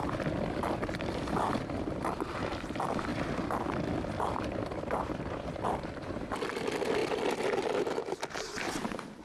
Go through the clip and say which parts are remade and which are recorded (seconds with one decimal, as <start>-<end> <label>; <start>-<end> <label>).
0.0-9.2 recorded